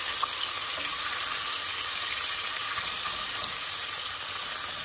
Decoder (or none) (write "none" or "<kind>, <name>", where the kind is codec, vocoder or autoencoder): none